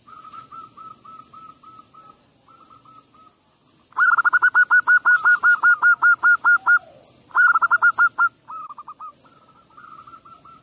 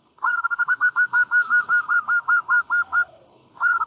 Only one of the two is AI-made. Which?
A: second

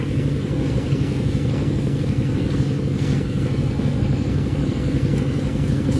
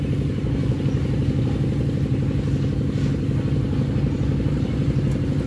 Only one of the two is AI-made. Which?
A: first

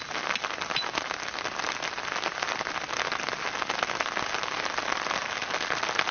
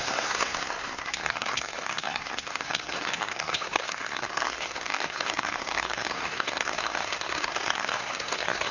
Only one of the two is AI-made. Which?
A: second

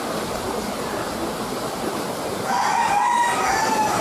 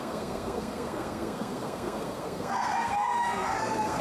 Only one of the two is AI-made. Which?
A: second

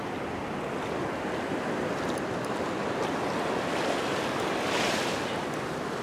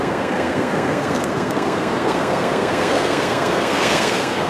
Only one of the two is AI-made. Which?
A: second